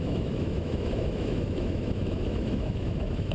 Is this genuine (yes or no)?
no